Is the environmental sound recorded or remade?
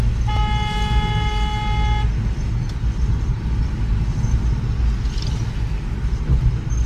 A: recorded